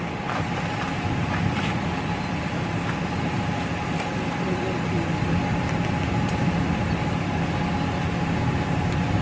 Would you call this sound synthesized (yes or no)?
no